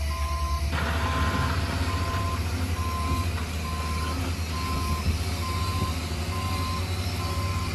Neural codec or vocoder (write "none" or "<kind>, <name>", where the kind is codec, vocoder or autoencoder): none